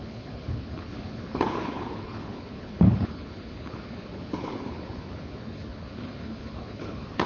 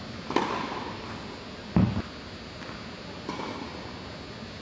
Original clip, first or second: second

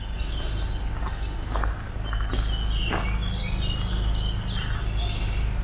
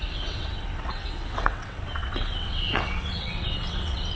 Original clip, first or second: first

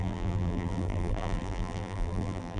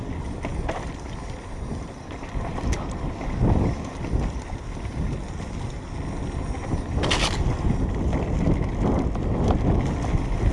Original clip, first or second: second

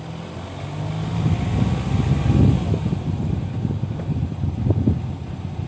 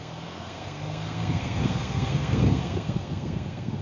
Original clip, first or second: first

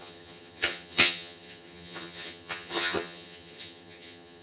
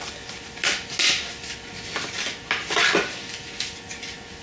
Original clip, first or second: second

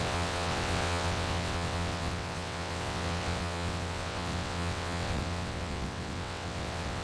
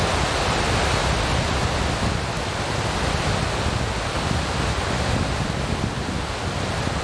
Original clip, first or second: second